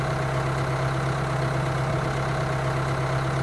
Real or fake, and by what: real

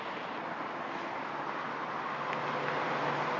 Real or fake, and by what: real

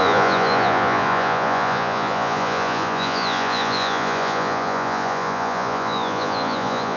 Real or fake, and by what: fake, vocoder, Vocos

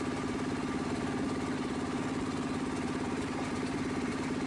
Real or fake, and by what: fake, vocoder, BigVGAN v2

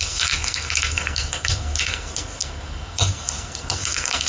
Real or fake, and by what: fake, codec, SNAC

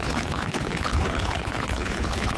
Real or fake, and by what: fake, codec, HILCodec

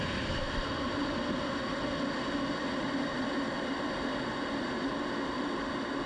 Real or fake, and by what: real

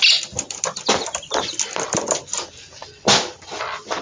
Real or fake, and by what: real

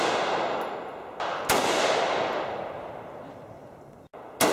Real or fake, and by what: real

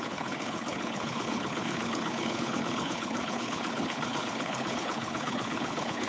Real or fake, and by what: fake, codec, HILCodec